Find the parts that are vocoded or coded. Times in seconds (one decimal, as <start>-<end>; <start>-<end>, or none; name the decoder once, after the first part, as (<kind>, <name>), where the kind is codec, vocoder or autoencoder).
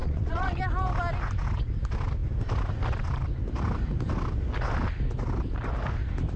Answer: 0.0-0.6 (vocoder, WaveNeXt)